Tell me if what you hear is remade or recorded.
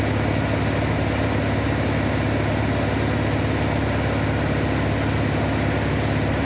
recorded